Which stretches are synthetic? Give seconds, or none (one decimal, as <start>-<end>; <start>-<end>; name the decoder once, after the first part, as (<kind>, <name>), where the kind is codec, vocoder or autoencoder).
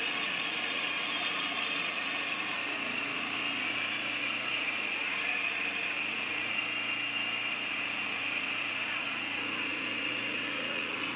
0.0-5.1 (vocoder, Vocos); 6.1-6.6; 7.5-11.2